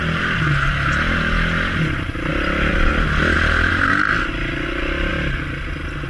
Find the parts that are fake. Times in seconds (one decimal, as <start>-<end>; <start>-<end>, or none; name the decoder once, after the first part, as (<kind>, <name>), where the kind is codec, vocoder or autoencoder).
none